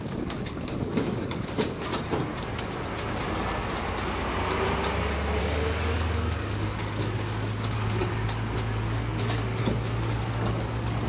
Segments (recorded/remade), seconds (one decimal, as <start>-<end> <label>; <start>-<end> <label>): 0.0-1.9 remade; 1.9-5.4 recorded; 5.4-11.1 remade